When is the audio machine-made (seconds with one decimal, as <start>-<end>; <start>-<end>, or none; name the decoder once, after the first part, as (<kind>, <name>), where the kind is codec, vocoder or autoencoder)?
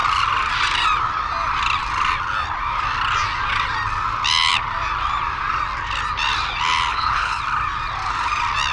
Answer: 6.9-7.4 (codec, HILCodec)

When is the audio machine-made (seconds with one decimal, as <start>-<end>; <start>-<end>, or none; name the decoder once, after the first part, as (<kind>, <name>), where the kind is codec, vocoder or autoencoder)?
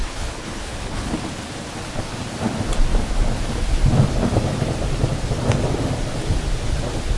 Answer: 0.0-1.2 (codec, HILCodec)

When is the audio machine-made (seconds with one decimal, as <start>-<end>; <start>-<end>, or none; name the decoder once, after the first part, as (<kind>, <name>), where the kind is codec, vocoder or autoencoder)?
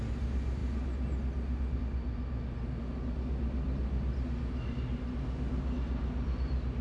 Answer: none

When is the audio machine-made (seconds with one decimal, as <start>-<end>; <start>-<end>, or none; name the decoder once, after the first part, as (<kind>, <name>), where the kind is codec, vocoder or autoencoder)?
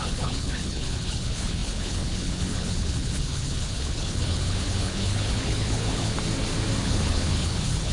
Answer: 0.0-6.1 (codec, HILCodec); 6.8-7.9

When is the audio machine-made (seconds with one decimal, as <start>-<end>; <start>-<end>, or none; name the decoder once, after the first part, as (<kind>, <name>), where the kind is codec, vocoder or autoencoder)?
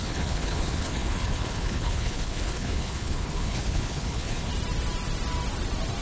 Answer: 0.0-4.5 (codec, HILCodec)